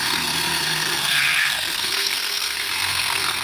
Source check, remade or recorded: remade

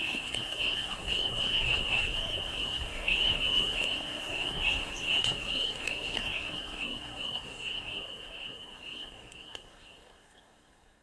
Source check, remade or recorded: remade